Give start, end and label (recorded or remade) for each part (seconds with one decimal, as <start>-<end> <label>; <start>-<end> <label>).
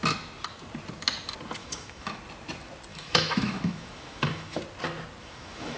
0.0-1.6 recorded; 1.6-2.2 remade; 2.2-2.9 recorded; 2.9-4.6 remade; 4.6-5.2 recorded; 5.2-5.8 remade